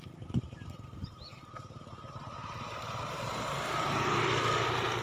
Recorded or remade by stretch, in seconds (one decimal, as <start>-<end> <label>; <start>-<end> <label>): 0.0-1.3 recorded; 1.3-4.3 remade; 4.3-5.0 recorded